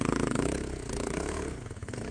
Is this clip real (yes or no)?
no